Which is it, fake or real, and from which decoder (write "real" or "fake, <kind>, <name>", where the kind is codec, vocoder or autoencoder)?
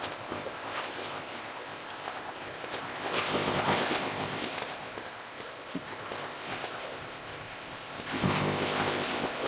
fake, codec, ZipCodec